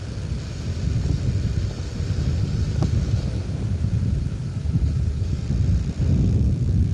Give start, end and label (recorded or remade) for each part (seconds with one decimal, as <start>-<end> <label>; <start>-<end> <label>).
0.0-3.4 recorded; 3.4-5.4 remade; 5.4-6.9 recorded